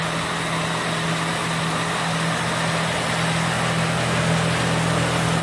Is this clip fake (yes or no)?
no